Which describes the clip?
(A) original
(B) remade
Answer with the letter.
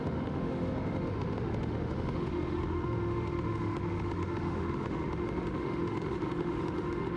B